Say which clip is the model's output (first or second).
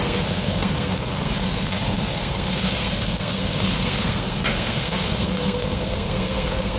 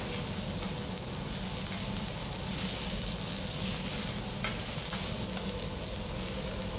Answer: first